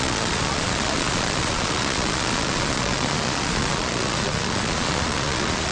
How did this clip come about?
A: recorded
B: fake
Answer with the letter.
B